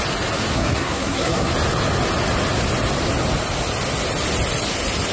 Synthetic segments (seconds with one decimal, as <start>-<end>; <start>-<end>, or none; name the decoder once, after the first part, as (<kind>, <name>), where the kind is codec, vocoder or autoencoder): 0.5-1.5 (codec, SNAC)